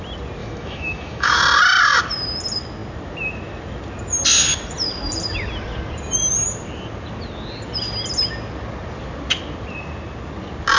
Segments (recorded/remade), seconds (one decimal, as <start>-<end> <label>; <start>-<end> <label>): 0.0-0.4 recorded; 0.4-1.4 remade; 1.4-10.8 recorded